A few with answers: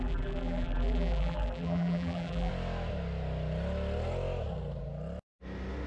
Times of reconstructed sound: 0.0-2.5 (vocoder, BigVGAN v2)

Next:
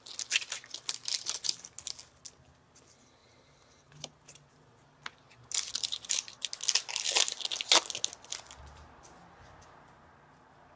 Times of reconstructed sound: 3.2-5.2 (vocoder, BigVGAN v2)